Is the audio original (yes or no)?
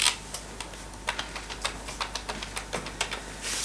yes